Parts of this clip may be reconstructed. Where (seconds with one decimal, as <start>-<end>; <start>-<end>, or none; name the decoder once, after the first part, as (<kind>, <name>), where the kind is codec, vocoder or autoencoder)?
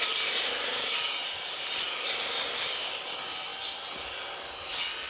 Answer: none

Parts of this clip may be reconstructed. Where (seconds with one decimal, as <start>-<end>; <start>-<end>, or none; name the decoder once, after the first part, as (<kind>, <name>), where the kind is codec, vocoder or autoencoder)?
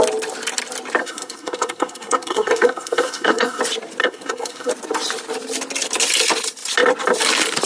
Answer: 1.0-3.6 (codec, SNAC); 4.0-4.7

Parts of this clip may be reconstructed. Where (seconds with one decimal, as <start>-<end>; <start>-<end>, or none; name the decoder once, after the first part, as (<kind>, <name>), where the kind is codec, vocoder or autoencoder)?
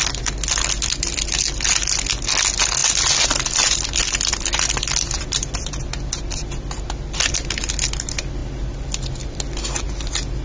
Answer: none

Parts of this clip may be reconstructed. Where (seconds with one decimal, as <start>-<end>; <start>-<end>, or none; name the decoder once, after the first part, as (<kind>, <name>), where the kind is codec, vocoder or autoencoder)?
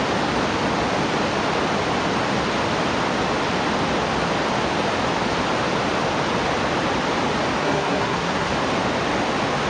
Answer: 7.6-8.5 (codec, SNAC)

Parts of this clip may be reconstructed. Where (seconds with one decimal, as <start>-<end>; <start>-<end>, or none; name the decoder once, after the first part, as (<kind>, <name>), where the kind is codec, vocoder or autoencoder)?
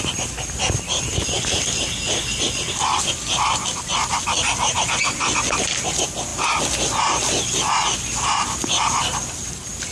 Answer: none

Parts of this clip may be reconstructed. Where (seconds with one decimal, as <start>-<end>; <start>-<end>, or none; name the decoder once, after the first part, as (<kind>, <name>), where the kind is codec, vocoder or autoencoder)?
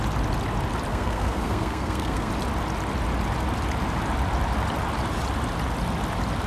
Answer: 0.9-2.3 (codec, SNAC)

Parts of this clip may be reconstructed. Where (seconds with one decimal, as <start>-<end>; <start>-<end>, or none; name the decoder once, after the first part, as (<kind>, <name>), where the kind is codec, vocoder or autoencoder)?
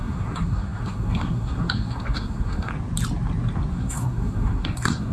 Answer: 0.0-2.7 (codec, SNAC); 3.7-5.1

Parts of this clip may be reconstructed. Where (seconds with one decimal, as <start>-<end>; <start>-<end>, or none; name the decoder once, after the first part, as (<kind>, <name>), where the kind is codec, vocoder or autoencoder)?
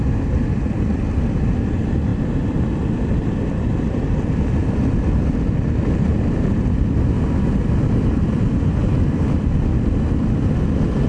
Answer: none